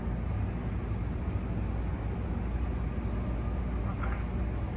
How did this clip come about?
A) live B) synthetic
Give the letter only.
A